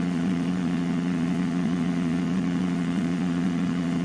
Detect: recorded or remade remade